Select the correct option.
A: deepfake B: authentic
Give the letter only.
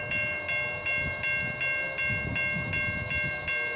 B